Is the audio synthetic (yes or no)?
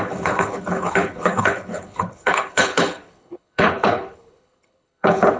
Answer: yes